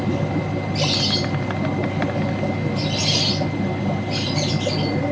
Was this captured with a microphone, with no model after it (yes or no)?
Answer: yes